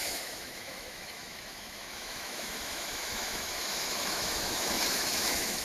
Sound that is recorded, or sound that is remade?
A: remade